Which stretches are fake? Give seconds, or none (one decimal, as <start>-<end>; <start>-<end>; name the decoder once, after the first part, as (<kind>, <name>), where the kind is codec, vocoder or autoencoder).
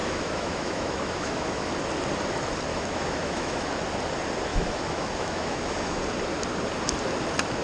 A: 0.0-1.7 (autoencoder, DAC-VAE); 2.7-3.7; 4.5-6.0